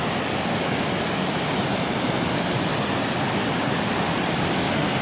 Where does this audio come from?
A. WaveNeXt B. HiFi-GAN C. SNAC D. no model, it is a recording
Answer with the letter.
D